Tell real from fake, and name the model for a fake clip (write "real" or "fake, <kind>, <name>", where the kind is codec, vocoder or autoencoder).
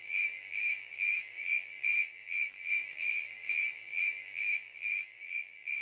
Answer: fake, vocoder, BigVGAN v2